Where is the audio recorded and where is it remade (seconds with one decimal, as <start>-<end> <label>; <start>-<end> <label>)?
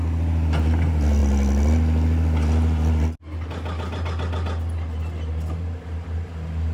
0.0-6.7 recorded